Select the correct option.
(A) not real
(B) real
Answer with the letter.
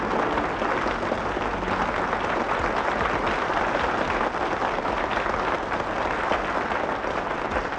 B